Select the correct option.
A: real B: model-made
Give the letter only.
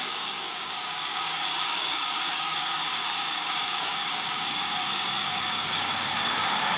B